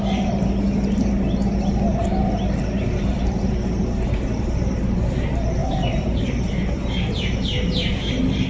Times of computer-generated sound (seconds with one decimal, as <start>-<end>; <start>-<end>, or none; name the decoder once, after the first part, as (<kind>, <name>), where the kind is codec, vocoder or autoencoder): 1.9-4.7 (vocoder, BigVGAN v2); 5.6-6.2